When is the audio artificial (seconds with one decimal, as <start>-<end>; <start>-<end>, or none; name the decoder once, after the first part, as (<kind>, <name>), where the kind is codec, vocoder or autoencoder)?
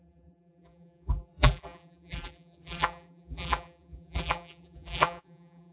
0.0-5.7 (vocoder, BigVGAN v2)